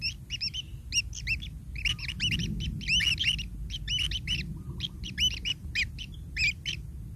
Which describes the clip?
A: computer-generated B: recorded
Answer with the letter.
B